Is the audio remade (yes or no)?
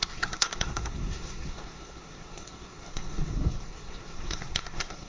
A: yes